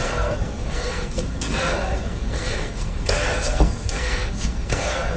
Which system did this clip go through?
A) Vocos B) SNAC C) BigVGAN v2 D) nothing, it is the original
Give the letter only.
B